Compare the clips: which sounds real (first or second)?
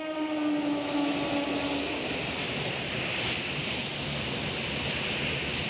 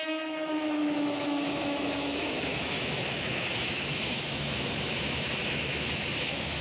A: first